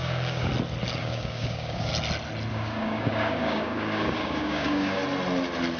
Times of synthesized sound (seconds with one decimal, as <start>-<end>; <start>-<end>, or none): 0.0-0.5; 1.0-1.9; 2.5-5.0